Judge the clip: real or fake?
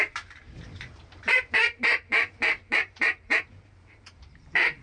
fake